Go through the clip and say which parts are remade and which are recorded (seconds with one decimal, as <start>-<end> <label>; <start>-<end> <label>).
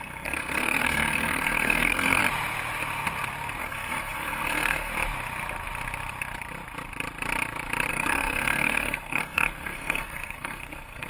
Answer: 0.0-2.2 remade; 2.2-3.6 recorded; 3.6-4.9 remade; 4.9-7.9 recorded; 7.9-11.1 remade